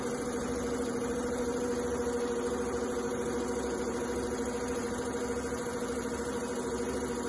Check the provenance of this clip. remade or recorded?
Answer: remade